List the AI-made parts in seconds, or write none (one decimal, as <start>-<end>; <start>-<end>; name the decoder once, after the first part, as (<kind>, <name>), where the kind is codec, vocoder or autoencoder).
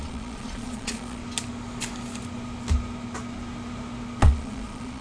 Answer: 0.0-1.2 (vocoder, Vocos); 4.2-5.0